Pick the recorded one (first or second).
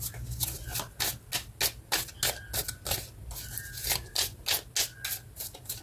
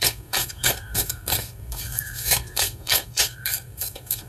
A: first